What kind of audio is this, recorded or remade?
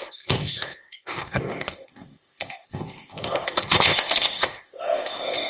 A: remade